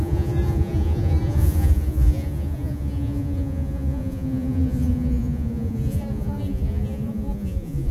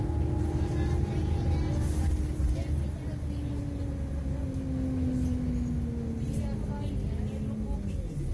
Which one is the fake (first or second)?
first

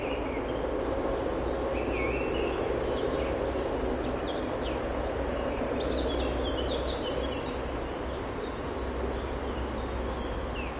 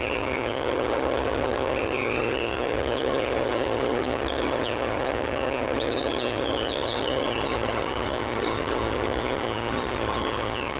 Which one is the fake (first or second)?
second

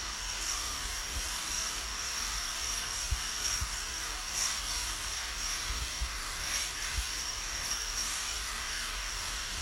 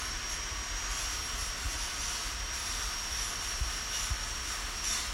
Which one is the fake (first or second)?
first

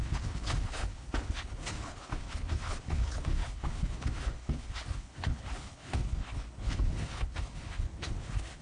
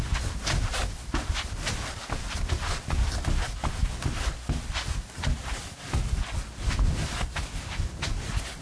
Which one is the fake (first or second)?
first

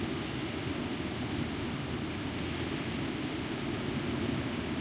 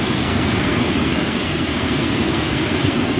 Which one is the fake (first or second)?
second